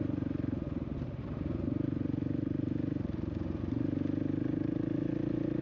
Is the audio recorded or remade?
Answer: recorded